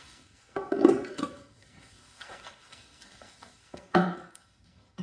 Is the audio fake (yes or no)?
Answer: yes